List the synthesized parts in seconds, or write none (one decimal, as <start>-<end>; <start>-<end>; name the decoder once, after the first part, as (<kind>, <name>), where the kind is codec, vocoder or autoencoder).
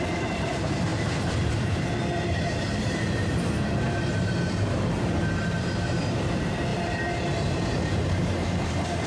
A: 0.0-9.1 (vocoder, BigVGAN v2)